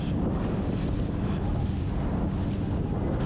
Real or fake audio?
real